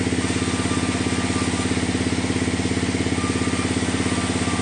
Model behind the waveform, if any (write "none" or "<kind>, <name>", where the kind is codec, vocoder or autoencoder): none